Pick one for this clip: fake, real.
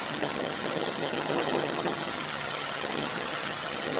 fake